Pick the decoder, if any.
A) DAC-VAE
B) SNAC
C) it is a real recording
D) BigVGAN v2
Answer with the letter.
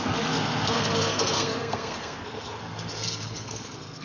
B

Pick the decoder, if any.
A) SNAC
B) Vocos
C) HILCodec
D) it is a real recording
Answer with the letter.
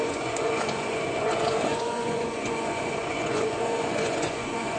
B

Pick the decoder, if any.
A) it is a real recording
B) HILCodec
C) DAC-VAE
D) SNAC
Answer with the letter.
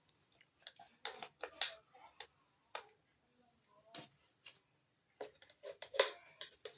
A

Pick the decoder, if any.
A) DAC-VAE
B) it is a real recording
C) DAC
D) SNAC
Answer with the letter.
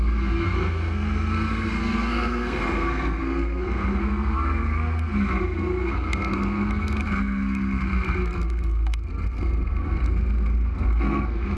D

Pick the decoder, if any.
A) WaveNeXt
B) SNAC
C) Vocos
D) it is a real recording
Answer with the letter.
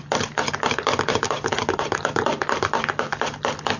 D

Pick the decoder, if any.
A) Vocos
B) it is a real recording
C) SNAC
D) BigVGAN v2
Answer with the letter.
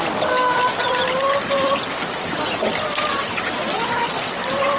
B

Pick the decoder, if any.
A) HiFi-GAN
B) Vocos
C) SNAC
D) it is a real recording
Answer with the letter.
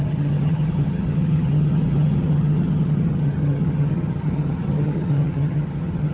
A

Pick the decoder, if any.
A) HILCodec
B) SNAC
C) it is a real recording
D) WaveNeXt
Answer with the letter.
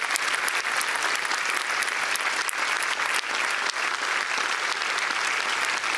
C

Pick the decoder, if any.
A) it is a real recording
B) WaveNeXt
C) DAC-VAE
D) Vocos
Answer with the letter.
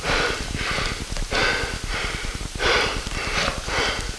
A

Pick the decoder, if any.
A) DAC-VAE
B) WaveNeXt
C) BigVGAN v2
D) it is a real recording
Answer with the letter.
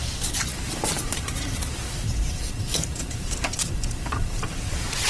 C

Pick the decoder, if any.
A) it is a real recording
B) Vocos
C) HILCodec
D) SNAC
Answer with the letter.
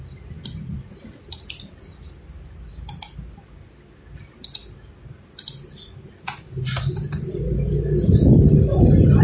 A